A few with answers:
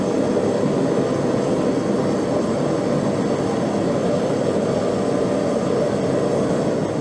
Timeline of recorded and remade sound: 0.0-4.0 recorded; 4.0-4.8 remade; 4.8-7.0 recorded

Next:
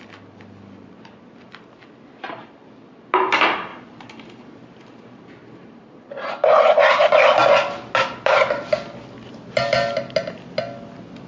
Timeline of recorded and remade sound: 0.0-3.7 recorded; 3.7-7.1 remade; 7.1-11.3 recorded

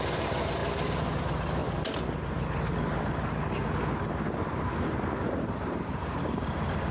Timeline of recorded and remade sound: 0.0-0.6 remade; 0.6-1.2 recorded; 1.2-1.6 remade; 1.6-4.5 recorded; 4.5-6.9 remade

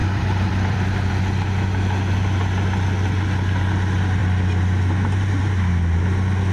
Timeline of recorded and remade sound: 0.0-1.1 remade; 1.1-6.5 recorded